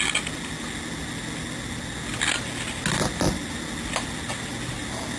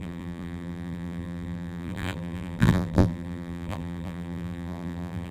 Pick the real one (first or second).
first